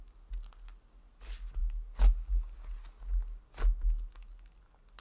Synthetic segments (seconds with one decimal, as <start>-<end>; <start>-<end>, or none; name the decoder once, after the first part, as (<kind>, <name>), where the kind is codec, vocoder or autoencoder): none